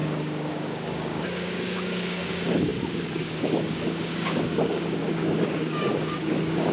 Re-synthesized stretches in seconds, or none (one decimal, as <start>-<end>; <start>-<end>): 0.0-6.7